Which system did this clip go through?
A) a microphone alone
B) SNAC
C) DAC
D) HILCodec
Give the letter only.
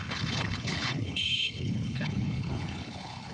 D